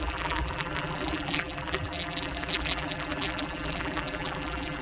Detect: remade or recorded remade